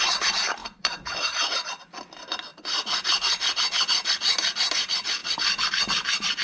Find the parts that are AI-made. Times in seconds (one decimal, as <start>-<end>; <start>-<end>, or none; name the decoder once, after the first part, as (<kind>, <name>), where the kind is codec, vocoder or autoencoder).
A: 0.6-1.1 (vocoder, BigVGAN v2); 2.5-3.6